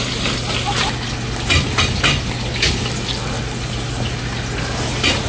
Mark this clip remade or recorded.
recorded